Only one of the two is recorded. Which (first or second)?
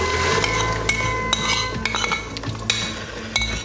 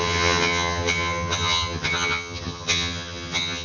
first